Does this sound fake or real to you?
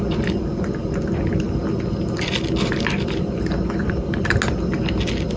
real